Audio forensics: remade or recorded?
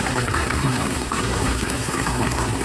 remade